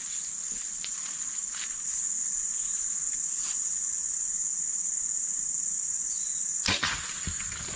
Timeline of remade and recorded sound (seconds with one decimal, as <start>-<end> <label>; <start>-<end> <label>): 0.0-7.8 recorded

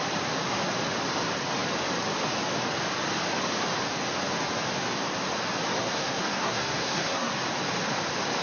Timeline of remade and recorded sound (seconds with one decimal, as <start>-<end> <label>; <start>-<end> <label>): 0.0-5.8 recorded; 5.8-7.3 remade; 7.3-8.4 recorded

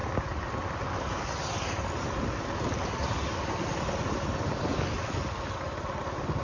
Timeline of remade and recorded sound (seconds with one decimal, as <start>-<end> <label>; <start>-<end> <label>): 0.0-6.4 recorded